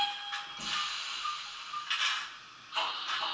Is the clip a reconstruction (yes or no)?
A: no